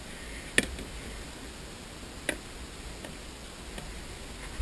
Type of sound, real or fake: real